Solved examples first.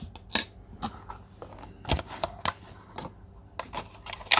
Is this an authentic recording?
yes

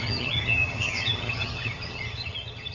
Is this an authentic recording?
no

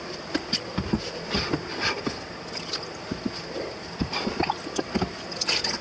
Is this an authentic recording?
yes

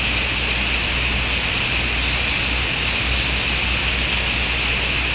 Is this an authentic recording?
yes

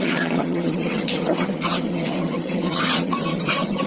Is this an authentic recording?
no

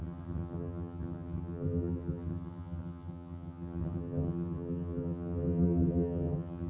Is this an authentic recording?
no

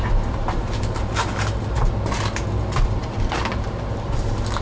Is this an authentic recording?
yes